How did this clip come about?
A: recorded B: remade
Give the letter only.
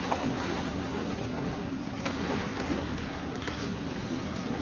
B